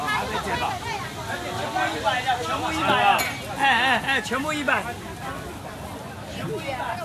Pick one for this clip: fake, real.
real